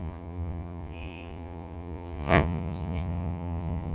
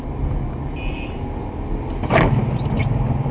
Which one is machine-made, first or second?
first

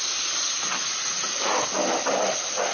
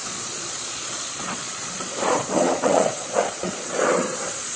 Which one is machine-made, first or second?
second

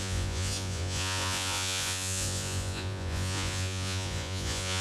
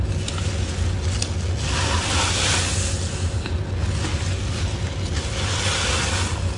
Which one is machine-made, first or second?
first